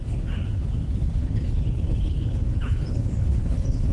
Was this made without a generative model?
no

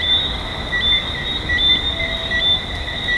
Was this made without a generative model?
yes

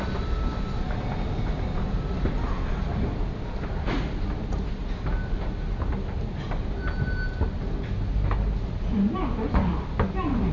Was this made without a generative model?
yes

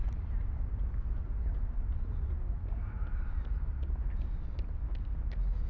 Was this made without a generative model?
yes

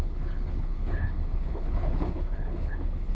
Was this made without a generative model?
no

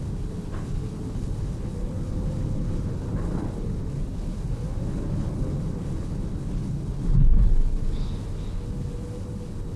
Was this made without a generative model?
no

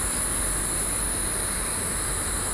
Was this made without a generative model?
yes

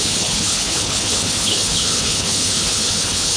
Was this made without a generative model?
no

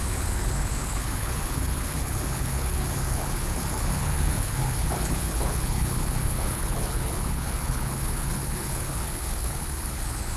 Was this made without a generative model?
no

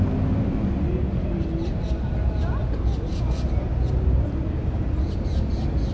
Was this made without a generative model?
yes